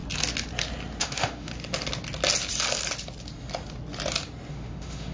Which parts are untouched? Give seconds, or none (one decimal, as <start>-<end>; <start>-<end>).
0.0-1.0; 1.5-4.5